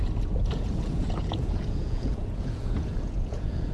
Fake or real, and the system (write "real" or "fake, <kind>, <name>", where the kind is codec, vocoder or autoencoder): fake, vocoder, Vocos